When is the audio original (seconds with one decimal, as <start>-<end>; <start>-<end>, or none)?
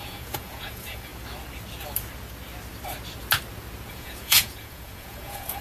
1.1-3.9